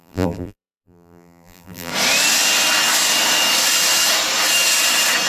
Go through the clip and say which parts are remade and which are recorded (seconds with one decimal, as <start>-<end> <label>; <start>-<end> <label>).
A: 0.0-1.9 remade; 1.9-5.3 recorded